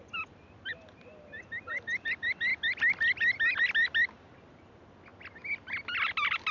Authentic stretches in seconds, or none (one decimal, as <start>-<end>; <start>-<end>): 0.0-6.5